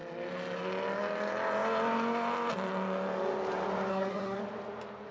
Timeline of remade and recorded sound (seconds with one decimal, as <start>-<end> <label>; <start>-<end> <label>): 0.0-3.9 recorded; 3.9-4.4 remade; 4.4-5.1 recorded